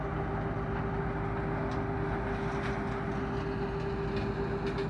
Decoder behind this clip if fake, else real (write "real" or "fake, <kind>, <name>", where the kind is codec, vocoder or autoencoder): real